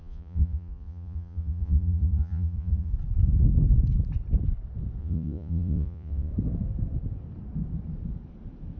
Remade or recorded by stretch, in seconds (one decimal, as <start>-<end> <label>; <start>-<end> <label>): 0.0-2.9 remade; 2.9-5.0 recorded; 5.0-6.3 remade; 6.3-8.8 recorded